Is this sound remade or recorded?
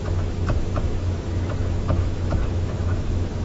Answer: remade